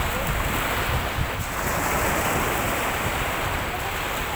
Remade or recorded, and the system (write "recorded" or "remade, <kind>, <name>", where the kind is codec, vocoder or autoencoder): recorded